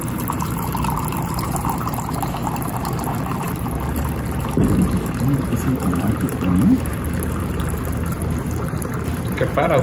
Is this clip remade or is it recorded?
remade